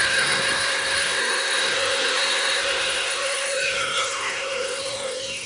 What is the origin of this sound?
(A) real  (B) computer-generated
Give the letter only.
B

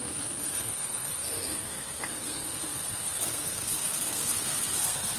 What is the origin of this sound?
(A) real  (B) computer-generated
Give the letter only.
B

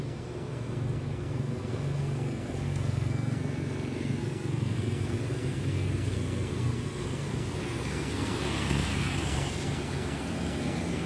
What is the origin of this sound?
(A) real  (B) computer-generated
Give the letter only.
B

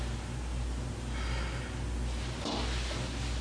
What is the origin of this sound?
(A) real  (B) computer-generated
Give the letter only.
A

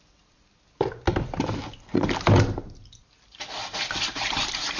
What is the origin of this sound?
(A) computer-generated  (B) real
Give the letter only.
B